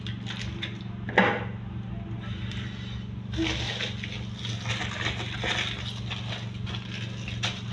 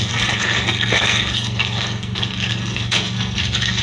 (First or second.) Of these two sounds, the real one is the first